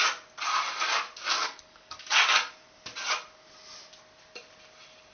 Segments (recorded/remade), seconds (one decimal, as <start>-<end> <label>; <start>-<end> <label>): 0.0-1.4 recorded; 1.4-2.1 remade; 2.1-5.1 recorded